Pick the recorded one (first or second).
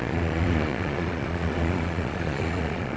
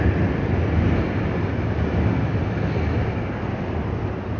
second